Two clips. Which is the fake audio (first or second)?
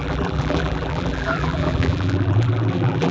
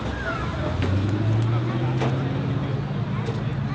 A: first